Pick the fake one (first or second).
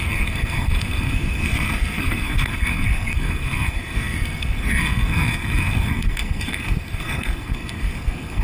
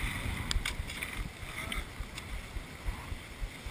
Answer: first